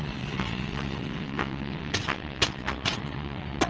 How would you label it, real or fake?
fake